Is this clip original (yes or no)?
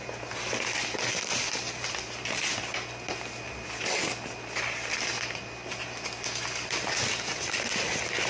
yes